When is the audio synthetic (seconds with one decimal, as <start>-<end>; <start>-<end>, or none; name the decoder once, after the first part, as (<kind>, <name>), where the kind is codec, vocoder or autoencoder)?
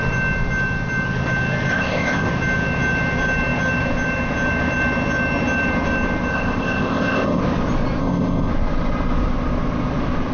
1.7-2.3 (codec, ZipCodec); 6.3-7.4; 8.0-8.5